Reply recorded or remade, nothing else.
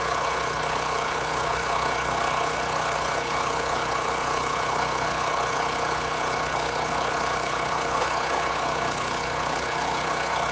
remade